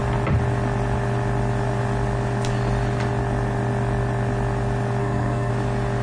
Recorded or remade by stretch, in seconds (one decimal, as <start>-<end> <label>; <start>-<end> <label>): 0.0-5.0 recorded; 5.0-5.5 remade; 5.5-6.0 recorded